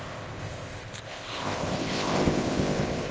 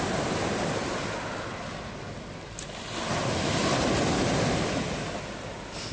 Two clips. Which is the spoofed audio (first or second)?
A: first